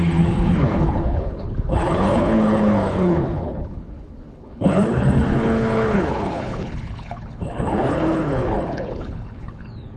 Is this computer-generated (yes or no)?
yes